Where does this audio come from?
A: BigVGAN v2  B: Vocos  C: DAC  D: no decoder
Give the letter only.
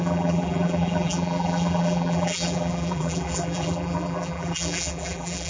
A